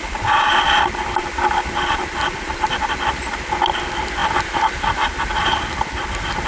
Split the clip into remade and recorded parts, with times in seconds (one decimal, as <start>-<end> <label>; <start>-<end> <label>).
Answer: 0.0-3.3 remade; 3.3-6.5 recorded